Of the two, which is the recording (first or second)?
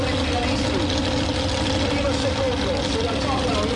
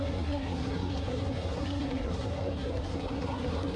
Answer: first